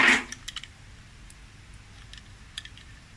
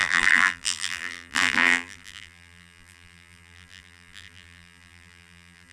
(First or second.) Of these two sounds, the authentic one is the first